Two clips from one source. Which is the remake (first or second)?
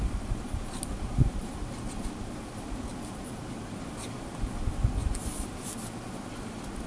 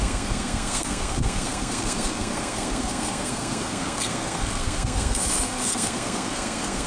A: second